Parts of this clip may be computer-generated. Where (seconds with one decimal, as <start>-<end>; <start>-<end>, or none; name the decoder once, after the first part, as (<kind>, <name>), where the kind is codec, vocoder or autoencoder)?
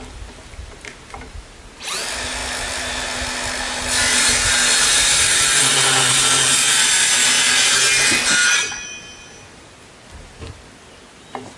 none